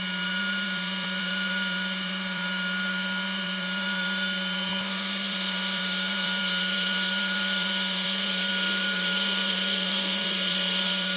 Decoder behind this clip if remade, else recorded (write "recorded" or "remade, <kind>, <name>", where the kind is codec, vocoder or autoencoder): remade, vocoder, BigVGAN v2